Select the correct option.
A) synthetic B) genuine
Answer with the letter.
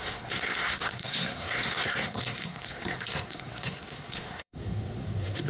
A